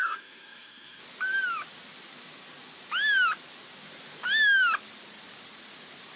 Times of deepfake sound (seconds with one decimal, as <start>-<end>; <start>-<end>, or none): 0.0-1.0